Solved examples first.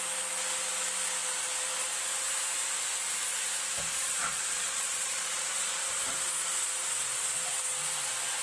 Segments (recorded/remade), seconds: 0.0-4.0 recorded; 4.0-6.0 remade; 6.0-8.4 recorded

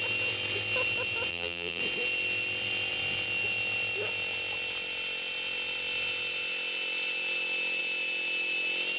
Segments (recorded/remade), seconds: 0.0-1.3 recorded; 1.3-1.8 remade; 1.8-9.0 recorded

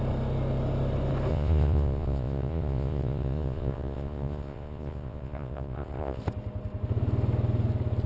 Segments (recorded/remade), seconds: 0.0-1.3 recorded; 1.3-6.2 remade; 6.2-8.1 recorded

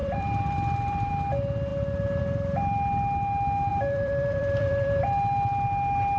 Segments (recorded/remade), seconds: 0.0-1.1 remade; 1.1-3.7 recorded; 3.7-5.0 remade; 5.0-6.2 recorded

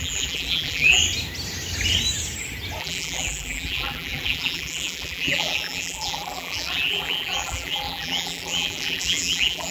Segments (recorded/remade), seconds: 0.0-1.0 remade; 1.0-2.8 recorded; 2.8-9.7 remade

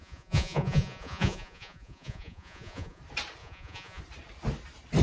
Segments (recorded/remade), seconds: 0.0-3.0 remade; 3.0-3.4 recorded; 3.4-4.0 remade; 4.0-5.0 recorded

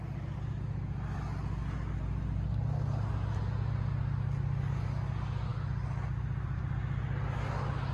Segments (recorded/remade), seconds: 0.0-5.5 recorded; 5.5-7.2 remade; 7.2-7.9 recorded